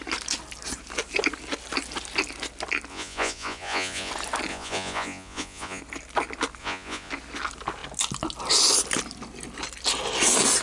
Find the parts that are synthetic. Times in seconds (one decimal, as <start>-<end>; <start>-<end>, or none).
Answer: 2.9-4.1; 4.5-5.8; 6.6-7.1